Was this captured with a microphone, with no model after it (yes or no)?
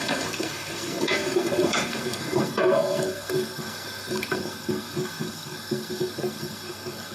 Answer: no